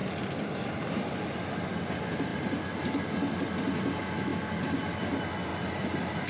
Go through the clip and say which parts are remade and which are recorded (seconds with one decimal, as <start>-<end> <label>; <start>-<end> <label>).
0.0-0.7 remade; 0.7-5.5 recorded; 5.5-6.3 remade